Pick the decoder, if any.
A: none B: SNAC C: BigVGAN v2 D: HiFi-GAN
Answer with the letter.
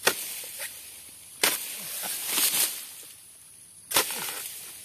C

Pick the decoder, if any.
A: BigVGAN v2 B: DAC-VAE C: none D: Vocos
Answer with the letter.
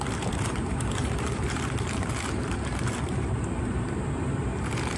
A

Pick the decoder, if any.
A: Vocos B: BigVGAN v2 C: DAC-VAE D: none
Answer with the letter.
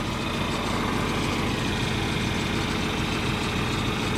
D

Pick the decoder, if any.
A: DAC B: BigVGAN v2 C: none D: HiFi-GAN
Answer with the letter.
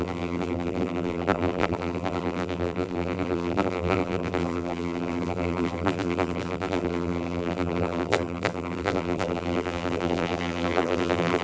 B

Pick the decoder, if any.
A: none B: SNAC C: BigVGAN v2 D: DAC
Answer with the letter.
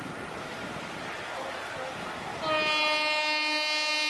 A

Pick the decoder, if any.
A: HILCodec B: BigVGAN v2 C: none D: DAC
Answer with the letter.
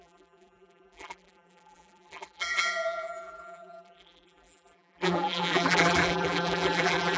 B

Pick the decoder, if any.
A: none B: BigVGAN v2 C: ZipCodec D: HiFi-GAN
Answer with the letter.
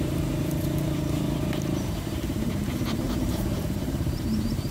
B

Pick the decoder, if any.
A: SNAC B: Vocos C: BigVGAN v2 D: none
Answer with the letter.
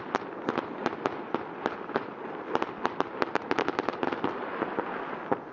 C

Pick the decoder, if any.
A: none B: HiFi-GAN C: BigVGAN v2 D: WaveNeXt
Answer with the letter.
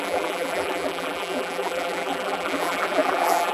C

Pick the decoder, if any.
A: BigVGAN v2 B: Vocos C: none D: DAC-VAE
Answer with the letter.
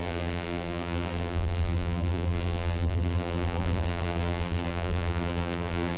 A